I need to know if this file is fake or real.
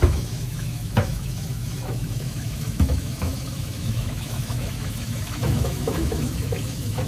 fake